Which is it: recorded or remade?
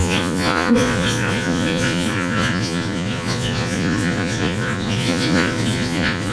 remade